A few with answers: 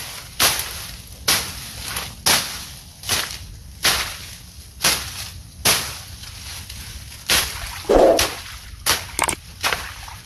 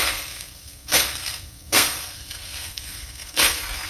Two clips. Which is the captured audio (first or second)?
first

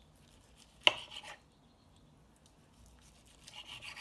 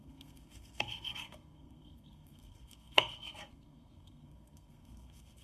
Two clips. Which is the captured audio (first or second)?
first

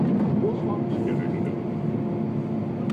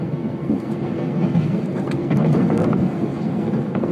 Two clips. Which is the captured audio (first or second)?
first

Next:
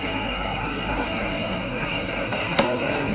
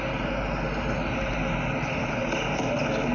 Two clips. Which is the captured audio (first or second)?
second